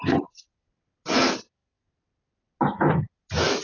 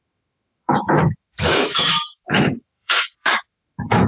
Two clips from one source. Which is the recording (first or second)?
first